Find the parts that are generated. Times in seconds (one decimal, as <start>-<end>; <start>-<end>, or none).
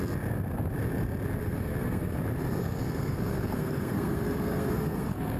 1.4-2.2; 2.6-5.4